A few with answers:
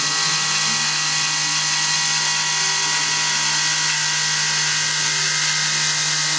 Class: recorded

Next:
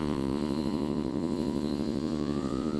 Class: remade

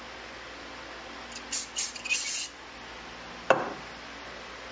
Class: recorded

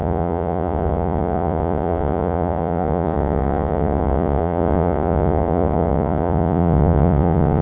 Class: remade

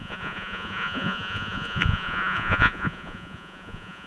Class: remade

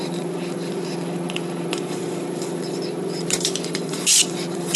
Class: remade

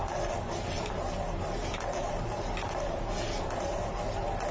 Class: recorded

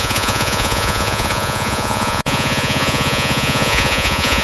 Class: remade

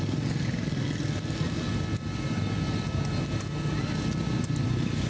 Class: recorded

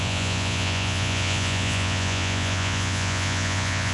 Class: remade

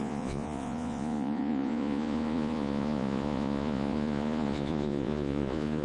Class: remade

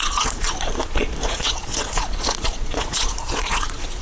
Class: remade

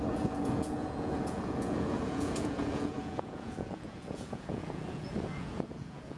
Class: remade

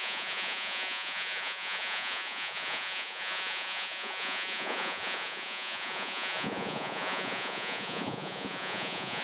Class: remade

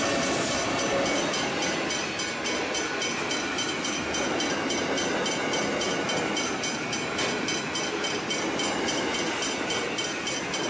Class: recorded